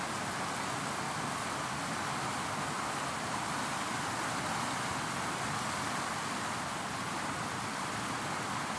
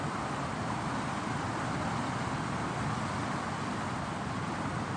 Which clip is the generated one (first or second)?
second